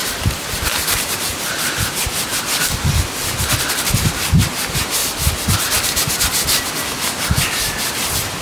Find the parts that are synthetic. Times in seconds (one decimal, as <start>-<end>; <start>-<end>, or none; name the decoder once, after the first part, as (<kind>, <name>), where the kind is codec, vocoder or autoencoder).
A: 0.0-2.3 (vocoder, BigVGAN v2); 3.7-5.0; 7.9-8.4